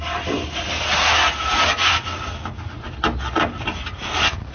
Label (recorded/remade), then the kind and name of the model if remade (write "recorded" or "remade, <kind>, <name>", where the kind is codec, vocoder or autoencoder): recorded